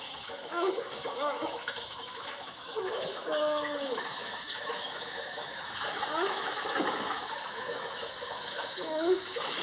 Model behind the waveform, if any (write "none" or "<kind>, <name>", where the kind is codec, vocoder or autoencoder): autoencoder, DAC-VAE